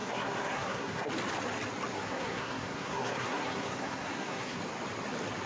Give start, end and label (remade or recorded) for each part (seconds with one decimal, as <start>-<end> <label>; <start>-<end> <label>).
0.0-1.1 remade; 1.1-1.9 recorded; 1.9-4.6 remade; 4.6-5.5 recorded